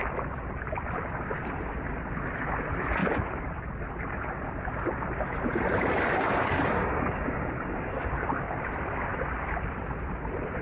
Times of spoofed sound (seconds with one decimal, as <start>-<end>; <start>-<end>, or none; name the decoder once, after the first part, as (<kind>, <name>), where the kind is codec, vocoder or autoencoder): 5.9-8.1 (codec, DAC)